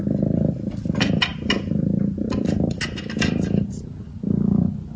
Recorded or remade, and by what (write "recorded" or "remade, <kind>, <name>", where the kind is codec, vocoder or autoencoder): recorded